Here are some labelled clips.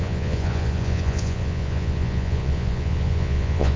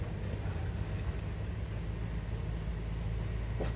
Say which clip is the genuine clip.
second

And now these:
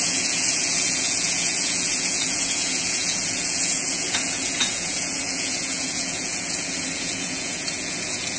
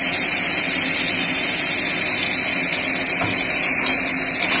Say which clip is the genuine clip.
second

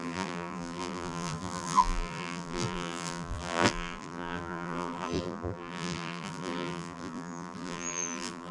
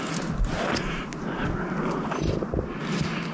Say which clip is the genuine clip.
second